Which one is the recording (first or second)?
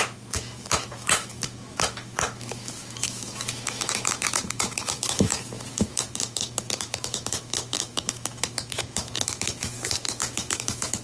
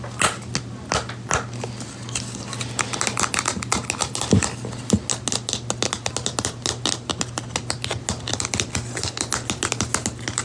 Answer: second